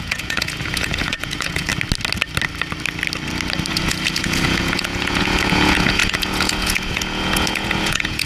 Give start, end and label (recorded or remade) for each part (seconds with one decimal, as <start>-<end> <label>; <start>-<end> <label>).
0.0-1.7 remade; 1.7-3.7 recorded; 3.7-8.2 remade

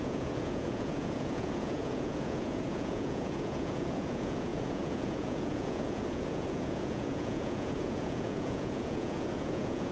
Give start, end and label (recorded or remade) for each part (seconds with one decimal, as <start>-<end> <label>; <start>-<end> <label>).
0.0-9.9 remade